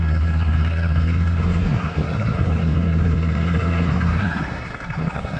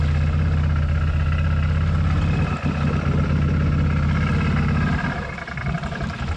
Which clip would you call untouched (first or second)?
second